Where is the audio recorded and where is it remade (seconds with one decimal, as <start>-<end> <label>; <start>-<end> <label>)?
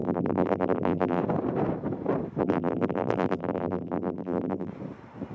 0.0-1.2 remade; 1.2-2.4 recorded; 2.4-4.7 remade; 4.7-5.3 recorded